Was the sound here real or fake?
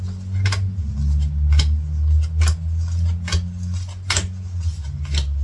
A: real